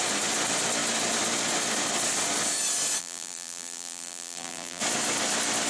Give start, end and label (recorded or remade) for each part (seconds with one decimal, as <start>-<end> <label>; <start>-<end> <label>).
0.0-3.0 recorded; 3.0-4.8 remade; 4.8-5.7 recorded